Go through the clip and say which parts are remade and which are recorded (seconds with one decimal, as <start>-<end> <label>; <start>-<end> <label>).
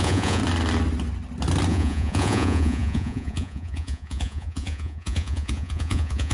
0.0-0.4 remade; 0.4-1.7 recorded; 1.7-6.3 remade